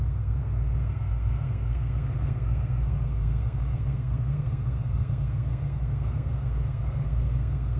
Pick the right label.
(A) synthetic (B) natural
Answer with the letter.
A